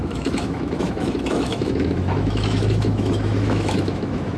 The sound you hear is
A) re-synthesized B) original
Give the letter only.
A